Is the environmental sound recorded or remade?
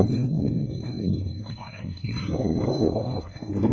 remade